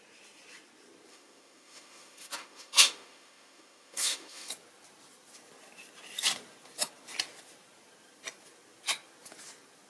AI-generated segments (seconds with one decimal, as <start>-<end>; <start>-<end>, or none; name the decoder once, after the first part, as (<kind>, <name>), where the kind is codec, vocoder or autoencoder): 1.1-4.5 (autoencoder, DAC-VAE)